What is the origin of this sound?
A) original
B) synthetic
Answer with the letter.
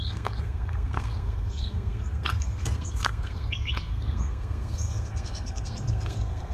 B